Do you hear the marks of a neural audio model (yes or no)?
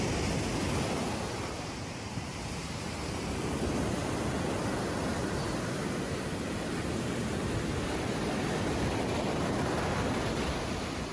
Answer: no